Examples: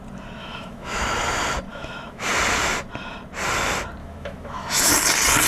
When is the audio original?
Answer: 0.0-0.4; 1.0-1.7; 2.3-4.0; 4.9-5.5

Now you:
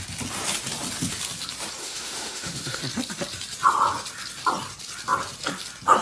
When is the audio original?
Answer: 0.0-1.8; 2.8-6.0